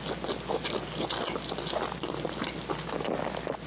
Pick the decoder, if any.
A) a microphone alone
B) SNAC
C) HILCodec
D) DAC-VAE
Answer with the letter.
A